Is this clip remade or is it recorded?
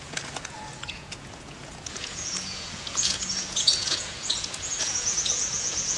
remade